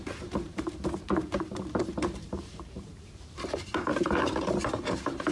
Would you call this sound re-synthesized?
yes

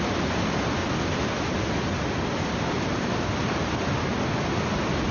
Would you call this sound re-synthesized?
no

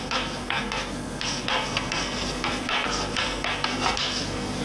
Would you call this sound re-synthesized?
yes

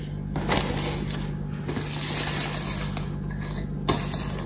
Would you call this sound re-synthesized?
no